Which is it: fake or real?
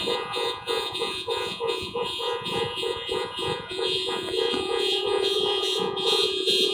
fake